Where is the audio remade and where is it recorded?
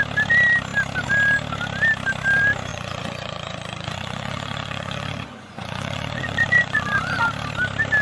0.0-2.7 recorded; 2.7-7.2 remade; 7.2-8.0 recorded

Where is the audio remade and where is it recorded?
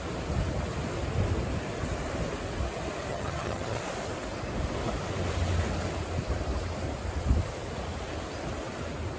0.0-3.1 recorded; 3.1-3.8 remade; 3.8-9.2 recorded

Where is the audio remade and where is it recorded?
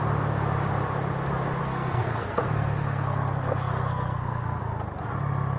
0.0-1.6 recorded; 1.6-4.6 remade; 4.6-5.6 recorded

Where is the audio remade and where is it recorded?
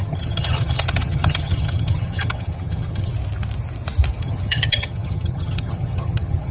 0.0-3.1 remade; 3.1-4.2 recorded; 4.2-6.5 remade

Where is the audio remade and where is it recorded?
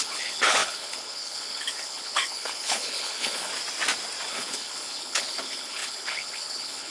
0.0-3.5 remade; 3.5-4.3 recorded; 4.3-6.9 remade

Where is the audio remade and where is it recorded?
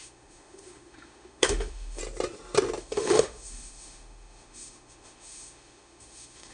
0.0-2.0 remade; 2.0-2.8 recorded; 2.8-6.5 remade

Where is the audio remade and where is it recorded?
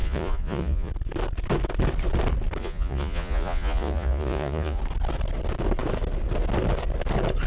0.0-0.9 remade; 0.9-2.6 recorded; 2.6-4.8 remade; 4.8-7.5 recorded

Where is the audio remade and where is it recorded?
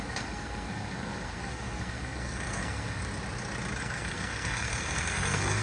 0.0-3.0 remade; 3.0-3.8 recorded; 3.8-5.6 remade